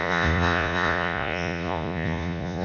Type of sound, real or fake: fake